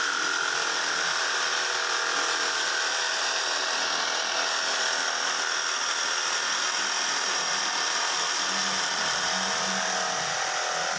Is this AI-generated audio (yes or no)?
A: no